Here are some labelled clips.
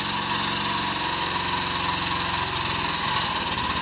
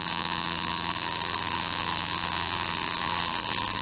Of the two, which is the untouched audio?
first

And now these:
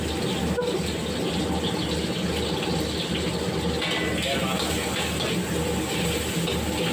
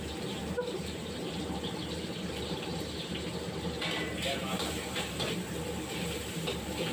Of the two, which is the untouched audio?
first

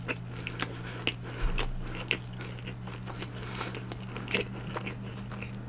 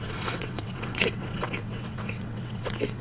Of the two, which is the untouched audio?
first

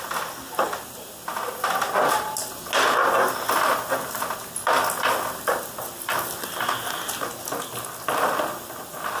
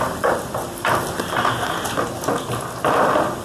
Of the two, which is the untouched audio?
first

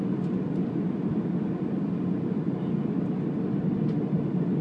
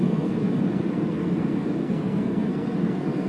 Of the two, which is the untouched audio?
first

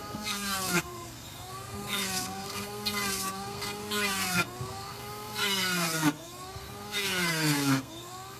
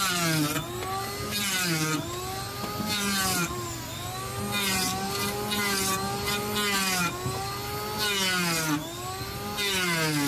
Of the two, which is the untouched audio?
second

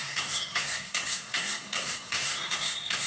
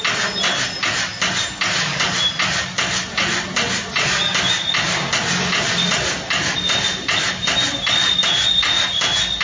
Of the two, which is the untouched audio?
second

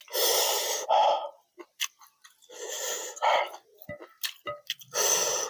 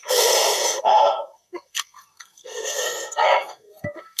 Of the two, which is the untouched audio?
first